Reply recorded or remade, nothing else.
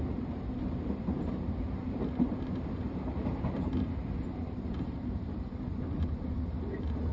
remade